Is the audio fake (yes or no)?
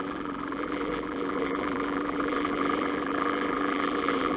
yes